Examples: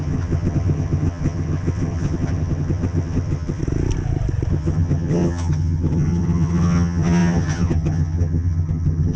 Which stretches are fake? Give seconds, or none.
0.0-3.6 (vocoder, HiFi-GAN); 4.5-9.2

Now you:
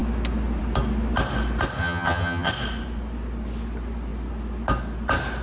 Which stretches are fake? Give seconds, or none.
1.8-2.5 (vocoder, HiFi-GAN)